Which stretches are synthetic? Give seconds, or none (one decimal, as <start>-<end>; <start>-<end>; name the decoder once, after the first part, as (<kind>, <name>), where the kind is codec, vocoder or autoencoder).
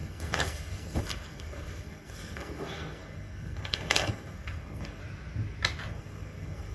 0.0-5.0 (codec, SNAC); 5.9-6.7